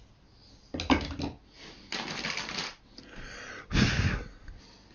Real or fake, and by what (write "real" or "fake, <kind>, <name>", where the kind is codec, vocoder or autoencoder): real